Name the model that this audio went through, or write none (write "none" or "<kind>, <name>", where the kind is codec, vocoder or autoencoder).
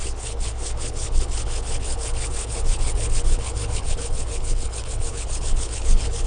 codec, HILCodec